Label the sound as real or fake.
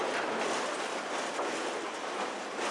real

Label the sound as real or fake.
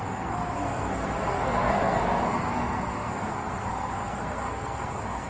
fake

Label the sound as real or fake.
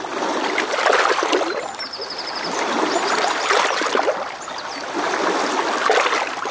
real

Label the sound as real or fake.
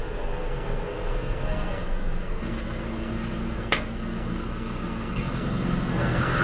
fake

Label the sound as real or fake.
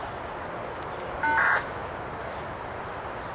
real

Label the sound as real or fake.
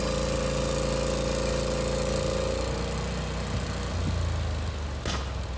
real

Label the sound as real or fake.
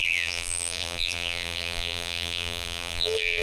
fake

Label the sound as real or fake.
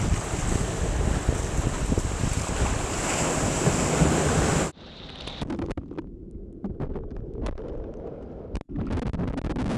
real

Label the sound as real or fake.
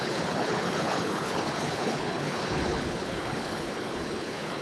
fake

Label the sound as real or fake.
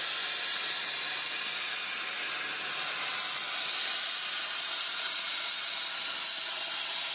real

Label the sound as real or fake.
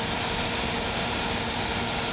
real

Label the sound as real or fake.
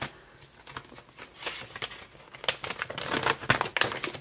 real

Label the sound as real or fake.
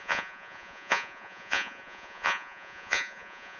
fake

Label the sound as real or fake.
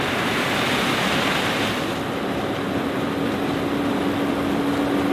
real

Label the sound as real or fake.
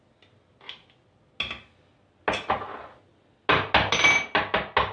real